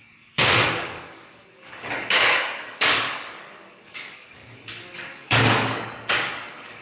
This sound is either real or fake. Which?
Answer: fake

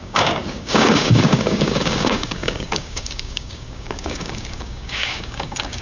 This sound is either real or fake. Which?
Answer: fake